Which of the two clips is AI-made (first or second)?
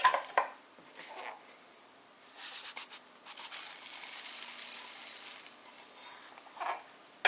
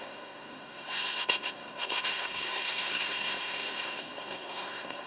second